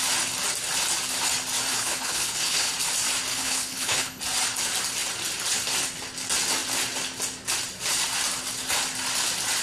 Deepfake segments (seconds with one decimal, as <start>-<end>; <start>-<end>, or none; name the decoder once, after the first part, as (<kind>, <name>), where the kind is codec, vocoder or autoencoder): 1.7-2.7 (codec, HILCodec); 3.3-4.2